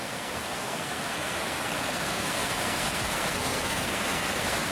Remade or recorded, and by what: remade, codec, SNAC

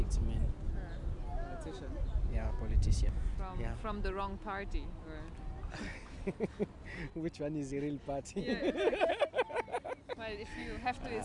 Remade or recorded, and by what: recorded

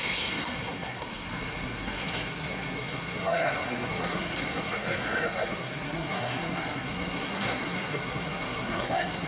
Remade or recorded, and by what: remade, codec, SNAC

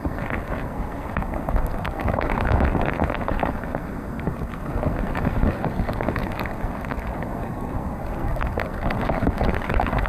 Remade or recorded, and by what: remade, codec, SNAC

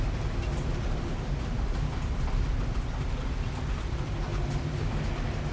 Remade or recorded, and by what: recorded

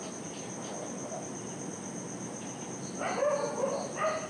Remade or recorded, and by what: recorded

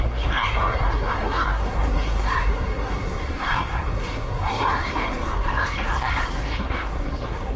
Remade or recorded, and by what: remade, codec, SNAC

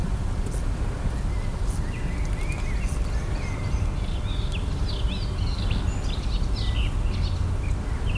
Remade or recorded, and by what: recorded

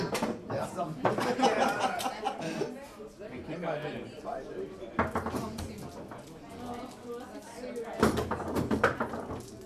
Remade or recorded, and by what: recorded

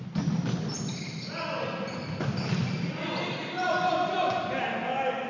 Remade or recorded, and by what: recorded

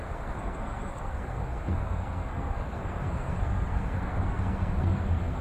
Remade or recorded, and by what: remade, codec, SNAC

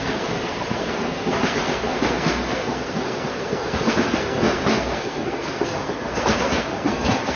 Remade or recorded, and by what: remade, codec, SNAC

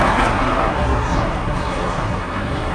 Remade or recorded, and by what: remade, codec, SNAC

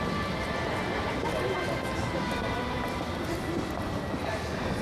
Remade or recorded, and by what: recorded